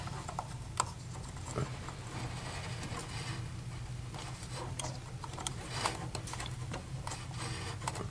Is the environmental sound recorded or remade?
recorded